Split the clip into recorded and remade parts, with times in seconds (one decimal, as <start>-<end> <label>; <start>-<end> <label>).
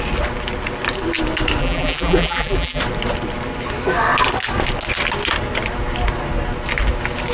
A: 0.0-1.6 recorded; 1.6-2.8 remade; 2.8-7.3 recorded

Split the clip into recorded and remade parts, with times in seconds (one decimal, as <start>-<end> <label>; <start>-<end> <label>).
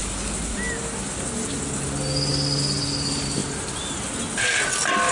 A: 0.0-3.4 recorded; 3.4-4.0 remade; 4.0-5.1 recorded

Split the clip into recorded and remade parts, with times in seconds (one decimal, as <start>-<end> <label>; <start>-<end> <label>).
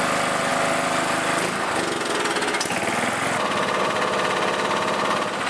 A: 0.0-5.5 recorded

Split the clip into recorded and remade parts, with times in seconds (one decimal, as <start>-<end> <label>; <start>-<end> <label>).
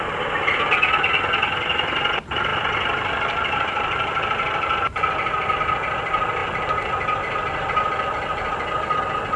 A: 0.0-2.5 recorded; 2.5-5.6 remade; 5.6-9.4 recorded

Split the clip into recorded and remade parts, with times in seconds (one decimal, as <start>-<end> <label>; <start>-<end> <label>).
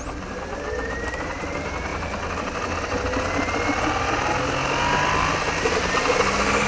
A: 0.0-0.8 recorded; 0.8-1.4 remade; 1.4-6.7 recorded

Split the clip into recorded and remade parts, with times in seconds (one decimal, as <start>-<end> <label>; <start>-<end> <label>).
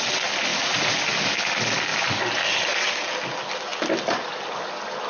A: 0.0-0.5 recorded; 0.5-1.3 remade; 1.3-5.1 recorded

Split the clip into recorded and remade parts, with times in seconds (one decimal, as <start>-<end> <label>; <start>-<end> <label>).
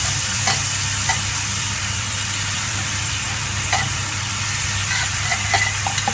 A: 0.0-0.6 remade; 0.6-1.6 recorded; 1.6-5.3 remade; 5.3-6.1 recorded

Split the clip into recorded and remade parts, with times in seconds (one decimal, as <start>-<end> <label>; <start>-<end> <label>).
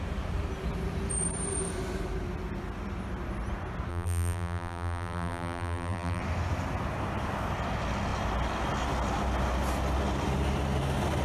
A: 0.0-3.9 recorded; 3.9-6.2 remade; 6.2-11.2 recorded